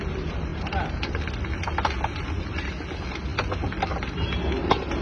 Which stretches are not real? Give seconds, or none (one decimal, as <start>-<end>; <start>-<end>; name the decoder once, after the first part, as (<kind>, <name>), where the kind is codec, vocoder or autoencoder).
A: none